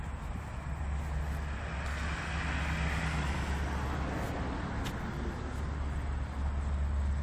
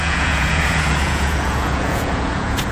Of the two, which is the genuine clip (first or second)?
first